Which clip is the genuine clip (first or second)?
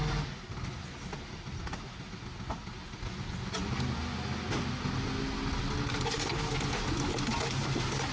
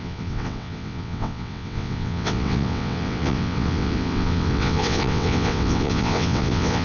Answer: first